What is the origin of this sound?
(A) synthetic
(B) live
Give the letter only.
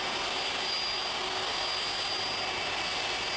B